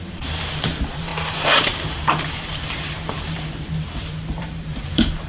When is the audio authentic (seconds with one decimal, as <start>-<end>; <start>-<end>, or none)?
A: 1.1-2.2